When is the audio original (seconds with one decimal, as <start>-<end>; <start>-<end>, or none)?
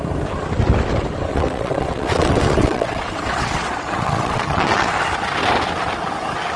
0.0-1.3; 4.9-6.6